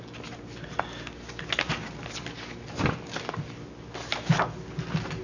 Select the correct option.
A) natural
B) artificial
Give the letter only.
A